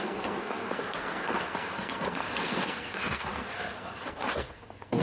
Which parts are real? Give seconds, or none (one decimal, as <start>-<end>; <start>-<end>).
none